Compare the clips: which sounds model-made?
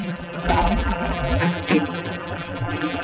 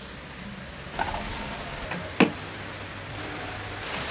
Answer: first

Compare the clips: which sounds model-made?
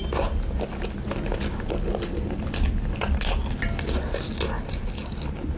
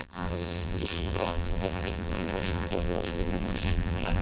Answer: second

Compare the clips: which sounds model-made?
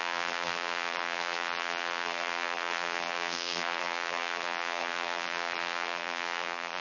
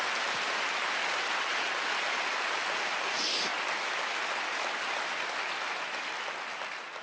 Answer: first